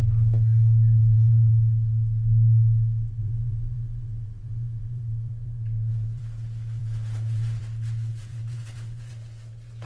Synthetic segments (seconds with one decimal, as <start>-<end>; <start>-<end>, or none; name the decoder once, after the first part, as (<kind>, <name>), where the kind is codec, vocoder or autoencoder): 1.0-1.5 (vocoder, Vocos); 3.2-6.2; 6.8-7.6; 8.1-9.1